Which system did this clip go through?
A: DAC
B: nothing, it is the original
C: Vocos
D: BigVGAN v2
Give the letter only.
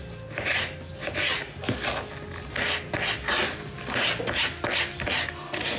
B